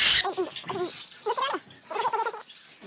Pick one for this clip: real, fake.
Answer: real